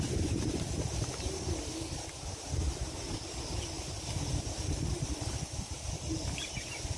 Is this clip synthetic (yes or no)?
no